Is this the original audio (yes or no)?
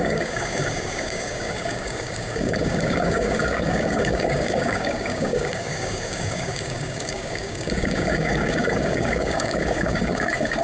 no